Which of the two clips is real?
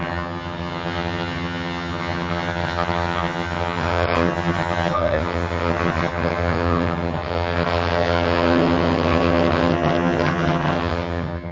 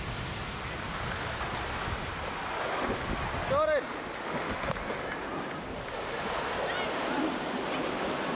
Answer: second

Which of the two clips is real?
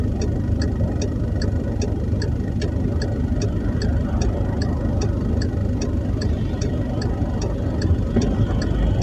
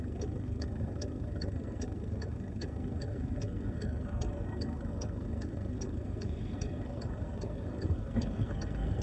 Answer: first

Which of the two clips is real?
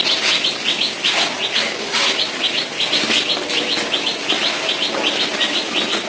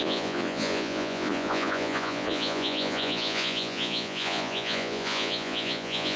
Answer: first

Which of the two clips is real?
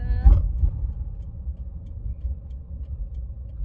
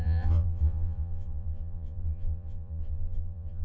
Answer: first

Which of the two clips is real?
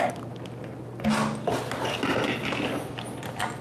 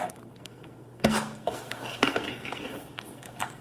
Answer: first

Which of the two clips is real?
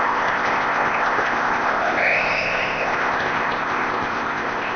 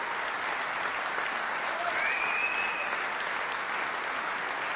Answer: second